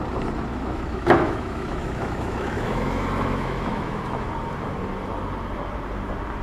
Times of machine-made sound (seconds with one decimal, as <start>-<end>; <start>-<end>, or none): 0.5-4.3